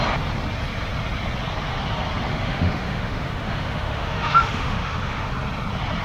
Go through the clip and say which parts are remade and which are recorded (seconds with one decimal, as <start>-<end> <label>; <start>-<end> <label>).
0.0-2.3 recorded; 2.3-5.3 remade; 5.3-6.0 recorded